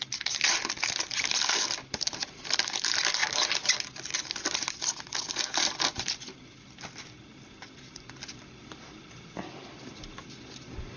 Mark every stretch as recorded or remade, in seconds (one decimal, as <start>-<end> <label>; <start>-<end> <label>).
0.0-11.0 remade